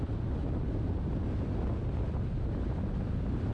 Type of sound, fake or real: real